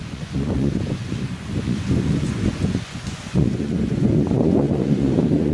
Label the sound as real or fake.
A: fake